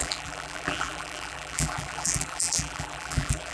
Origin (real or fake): fake